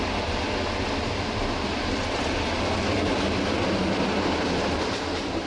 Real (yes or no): yes